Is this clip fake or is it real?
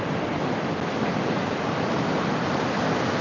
real